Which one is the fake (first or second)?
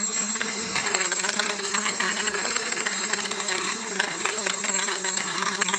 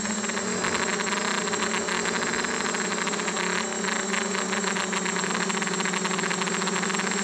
first